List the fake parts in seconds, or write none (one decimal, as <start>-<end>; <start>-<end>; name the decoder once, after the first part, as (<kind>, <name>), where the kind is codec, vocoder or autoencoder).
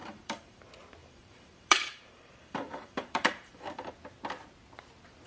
0.0-0.6 (vocoder, BigVGAN v2); 1.0-3.9